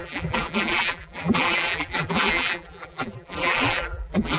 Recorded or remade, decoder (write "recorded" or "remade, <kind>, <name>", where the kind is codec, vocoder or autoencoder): remade, vocoder, BigVGAN v2